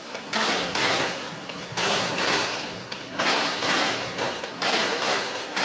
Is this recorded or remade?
remade